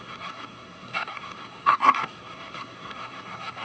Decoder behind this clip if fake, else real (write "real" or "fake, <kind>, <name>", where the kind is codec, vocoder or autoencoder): fake, codec, SNAC